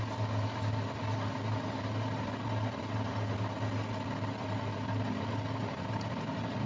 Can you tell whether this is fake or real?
real